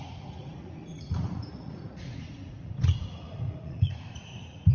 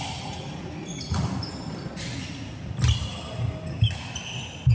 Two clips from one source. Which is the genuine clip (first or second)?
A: second